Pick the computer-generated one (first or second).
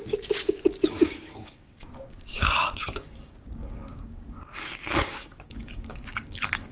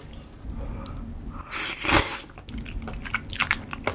first